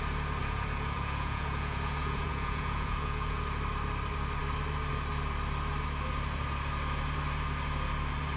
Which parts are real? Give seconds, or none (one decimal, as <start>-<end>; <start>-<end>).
0.0-0.4; 3.4-8.4